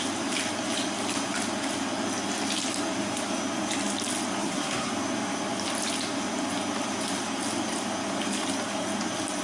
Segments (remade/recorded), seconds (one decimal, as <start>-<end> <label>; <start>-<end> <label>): 0.0-4.4 recorded; 4.4-4.9 remade; 4.9-9.4 recorded